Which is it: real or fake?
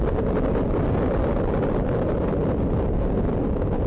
real